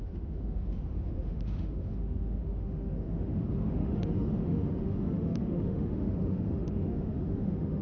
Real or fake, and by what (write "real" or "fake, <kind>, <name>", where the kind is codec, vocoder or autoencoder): fake, autoencoder, DAC-VAE